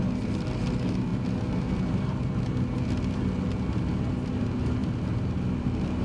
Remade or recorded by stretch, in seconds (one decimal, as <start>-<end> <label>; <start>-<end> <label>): 0.0-6.0 recorded